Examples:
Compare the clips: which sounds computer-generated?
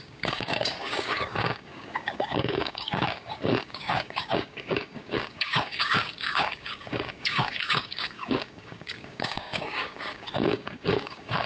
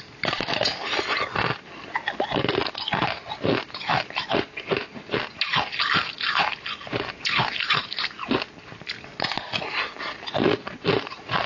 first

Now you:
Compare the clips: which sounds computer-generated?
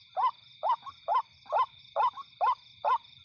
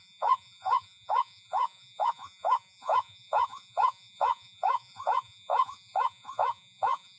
second